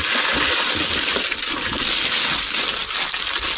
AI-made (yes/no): no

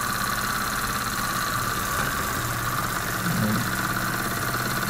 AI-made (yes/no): no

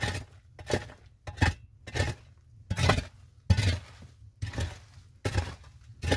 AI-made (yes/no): no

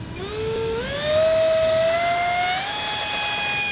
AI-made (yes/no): no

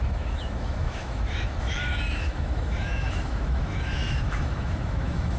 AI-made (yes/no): yes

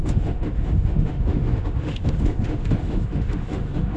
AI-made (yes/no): yes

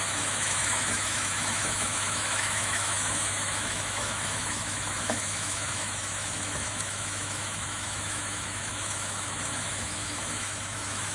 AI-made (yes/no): yes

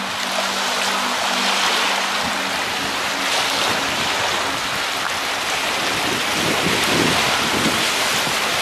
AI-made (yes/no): no